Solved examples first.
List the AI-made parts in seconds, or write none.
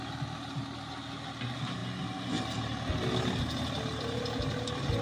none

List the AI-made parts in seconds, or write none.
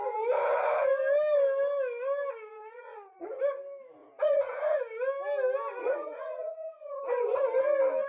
2.5-3.4 (vocoder, Vocos); 4.0-4.8; 5.8-7.0